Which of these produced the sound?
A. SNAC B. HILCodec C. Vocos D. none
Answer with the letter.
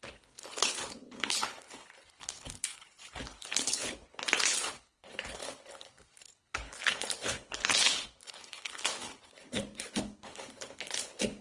B